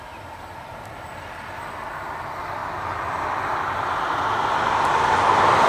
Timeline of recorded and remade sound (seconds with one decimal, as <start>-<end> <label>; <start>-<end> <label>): 0.0-5.7 recorded